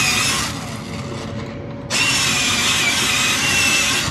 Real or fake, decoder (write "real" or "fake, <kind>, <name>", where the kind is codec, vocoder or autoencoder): real